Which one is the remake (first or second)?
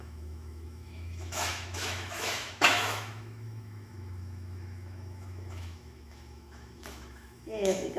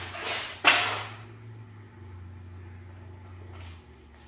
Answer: first